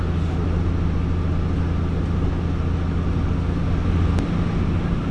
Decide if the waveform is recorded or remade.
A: recorded